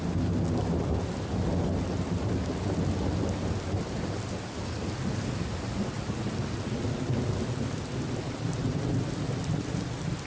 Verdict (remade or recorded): recorded